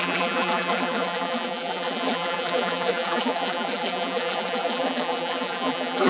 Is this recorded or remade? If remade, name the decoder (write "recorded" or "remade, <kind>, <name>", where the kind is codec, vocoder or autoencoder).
remade, vocoder, BigVGAN v2